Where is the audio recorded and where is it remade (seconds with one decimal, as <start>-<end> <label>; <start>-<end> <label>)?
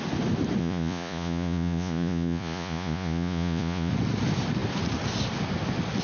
0.0-0.6 recorded; 0.6-3.9 remade; 3.9-6.0 recorded